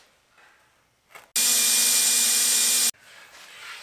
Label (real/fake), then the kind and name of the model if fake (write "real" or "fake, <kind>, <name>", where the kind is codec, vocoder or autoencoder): real